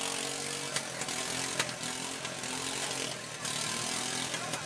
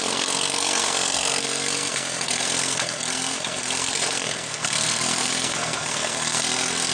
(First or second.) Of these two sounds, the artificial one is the second